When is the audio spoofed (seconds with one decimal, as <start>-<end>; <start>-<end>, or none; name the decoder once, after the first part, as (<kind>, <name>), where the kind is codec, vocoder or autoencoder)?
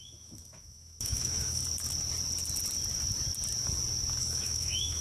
0.0-1.6 (autoencoder, DAC-VAE); 4.2-5.0